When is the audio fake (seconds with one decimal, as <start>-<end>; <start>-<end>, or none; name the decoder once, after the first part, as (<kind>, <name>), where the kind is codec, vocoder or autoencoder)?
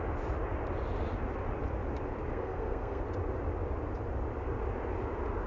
2.3-3.0 (codec, SNAC)